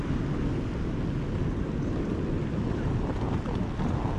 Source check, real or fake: real